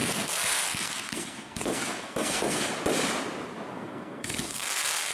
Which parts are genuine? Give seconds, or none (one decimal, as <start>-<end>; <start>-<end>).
2.7-3.7

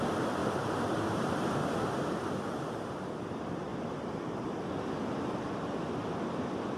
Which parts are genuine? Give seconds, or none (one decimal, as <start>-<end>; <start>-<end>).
0.4-1.9

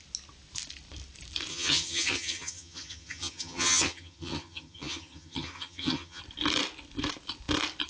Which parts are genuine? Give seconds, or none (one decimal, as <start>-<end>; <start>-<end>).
0.0-1.5; 6.2-7.9